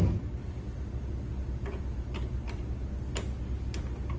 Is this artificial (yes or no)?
no